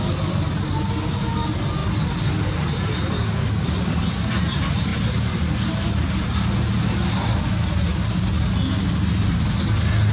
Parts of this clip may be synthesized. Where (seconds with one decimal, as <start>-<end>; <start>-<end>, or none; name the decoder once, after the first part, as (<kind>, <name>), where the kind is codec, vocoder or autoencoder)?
1.8-3.1 (vocoder, BigVGAN v2); 4.9-7.4